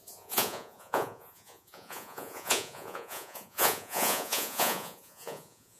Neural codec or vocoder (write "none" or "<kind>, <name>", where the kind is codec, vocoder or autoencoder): vocoder, Vocos